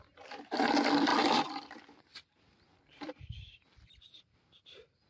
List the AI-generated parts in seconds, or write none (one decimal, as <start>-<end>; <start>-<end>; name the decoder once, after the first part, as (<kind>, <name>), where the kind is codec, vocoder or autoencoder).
none